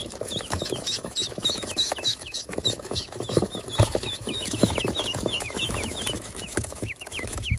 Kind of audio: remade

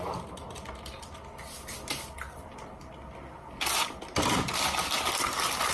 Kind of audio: recorded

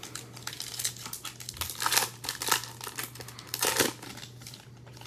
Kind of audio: recorded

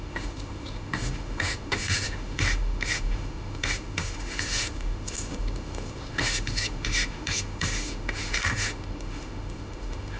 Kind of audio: remade